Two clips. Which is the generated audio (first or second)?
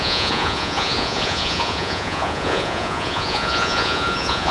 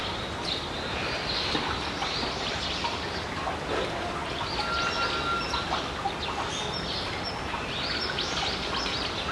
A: first